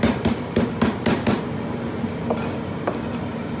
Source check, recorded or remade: recorded